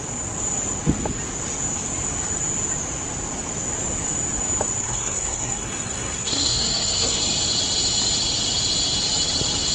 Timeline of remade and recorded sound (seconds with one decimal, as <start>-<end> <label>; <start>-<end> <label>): 0.0-4.8 recorded; 4.8-7.2 remade; 7.2-9.7 recorded